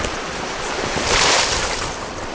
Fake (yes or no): yes